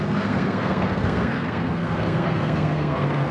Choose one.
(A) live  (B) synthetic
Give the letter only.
B